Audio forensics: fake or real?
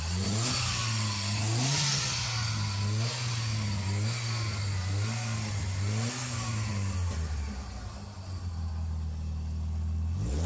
real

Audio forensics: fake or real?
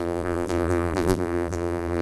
fake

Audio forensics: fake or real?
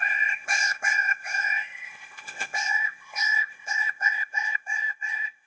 fake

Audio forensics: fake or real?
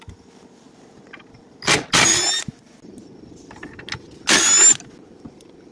real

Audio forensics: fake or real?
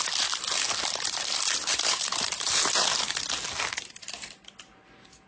real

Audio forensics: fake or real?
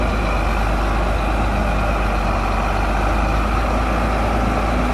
real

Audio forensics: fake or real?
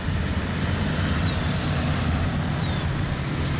real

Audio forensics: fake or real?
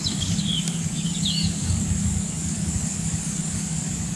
fake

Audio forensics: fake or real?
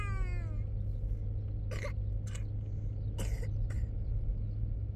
real